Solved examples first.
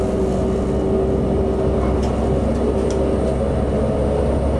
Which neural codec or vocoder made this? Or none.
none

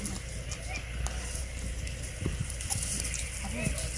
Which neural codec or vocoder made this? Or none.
none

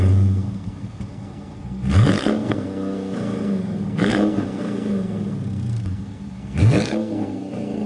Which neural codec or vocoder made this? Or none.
codec, SNAC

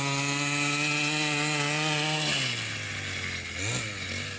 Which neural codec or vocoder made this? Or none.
none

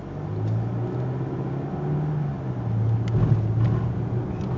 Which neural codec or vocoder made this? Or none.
none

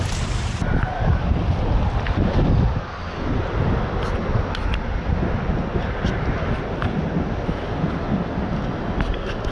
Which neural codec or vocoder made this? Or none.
none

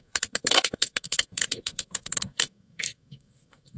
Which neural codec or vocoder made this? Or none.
codec, SNAC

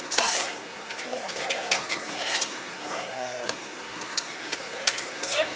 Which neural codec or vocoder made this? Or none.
codec, SNAC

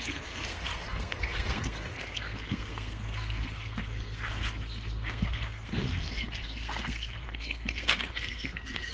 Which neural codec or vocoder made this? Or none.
codec, SNAC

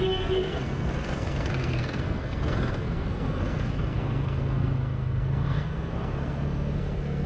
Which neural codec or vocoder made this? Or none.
codec, SNAC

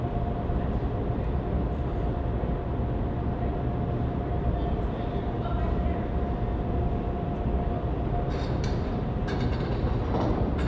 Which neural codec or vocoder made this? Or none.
none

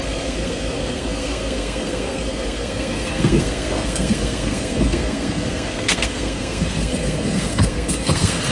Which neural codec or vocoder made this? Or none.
codec, SNAC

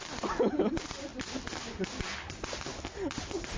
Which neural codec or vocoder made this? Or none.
none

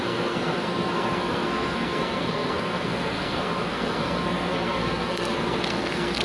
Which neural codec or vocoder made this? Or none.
codec, SNAC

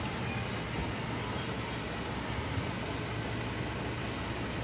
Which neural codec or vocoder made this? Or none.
none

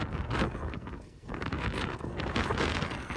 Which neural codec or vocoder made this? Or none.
codec, SNAC